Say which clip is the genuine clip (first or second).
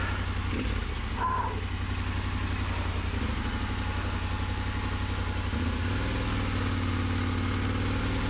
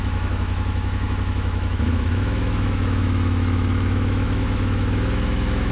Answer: first